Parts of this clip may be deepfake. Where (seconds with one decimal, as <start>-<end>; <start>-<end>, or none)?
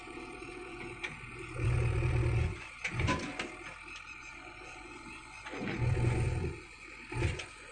0.0-3.3; 4.1-7.7